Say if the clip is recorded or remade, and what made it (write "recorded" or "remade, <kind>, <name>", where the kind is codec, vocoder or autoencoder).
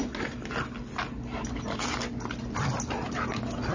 recorded